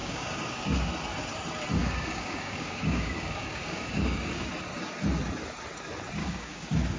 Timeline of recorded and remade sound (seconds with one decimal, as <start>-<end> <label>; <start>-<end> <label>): 0.0-0.9 remade; 0.9-1.8 recorded; 1.8-4.5 remade; 4.5-6.2 recorded; 6.2-7.0 remade